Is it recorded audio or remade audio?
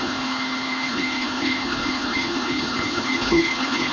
remade